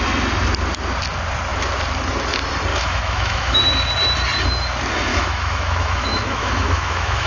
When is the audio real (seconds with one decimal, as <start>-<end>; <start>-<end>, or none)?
0.0-2.7; 3.6-5.1